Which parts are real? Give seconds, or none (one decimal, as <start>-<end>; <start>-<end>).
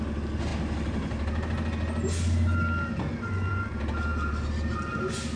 0.0-4.1; 5.0-5.4